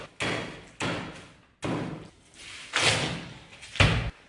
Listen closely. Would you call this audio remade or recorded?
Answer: recorded